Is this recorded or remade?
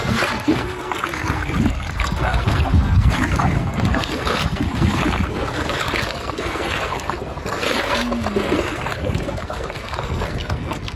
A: remade